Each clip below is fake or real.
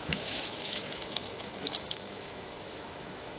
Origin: fake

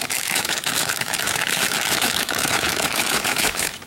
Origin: fake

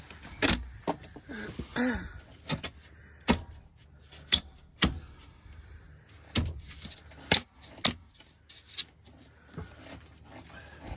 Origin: real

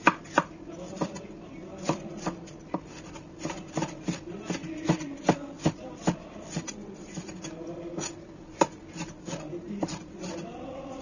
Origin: real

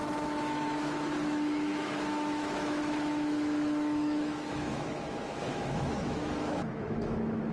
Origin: fake